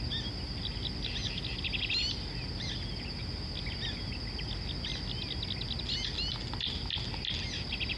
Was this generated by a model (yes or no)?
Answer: no